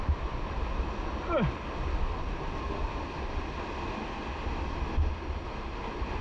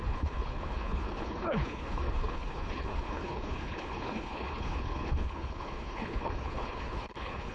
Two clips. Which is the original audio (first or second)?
first